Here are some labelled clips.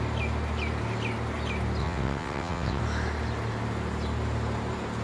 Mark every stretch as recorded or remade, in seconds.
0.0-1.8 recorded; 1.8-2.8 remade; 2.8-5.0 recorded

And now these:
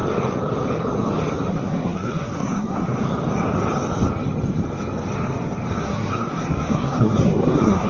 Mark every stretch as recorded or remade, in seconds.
0.0-1.5 recorded; 1.5-2.9 remade; 2.9-5.8 recorded; 5.8-7.9 remade

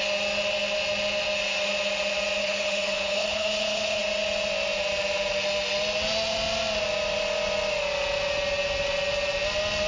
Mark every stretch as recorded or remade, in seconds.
0.0-2.4 recorded; 2.4-4.0 remade; 4.0-9.9 recorded

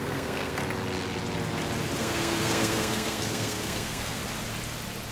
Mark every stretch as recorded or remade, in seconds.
0.0-0.6 remade; 0.6-2.0 recorded; 2.0-4.2 remade; 4.2-5.1 recorded

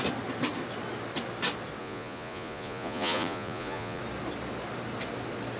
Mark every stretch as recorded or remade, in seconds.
0.0-1.8 recorded; 1.8-4.0 remade; 4.0-5.6 recorded